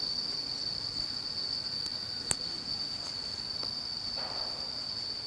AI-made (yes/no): no